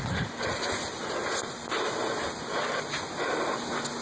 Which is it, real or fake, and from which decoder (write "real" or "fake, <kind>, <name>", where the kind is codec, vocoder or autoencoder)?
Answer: real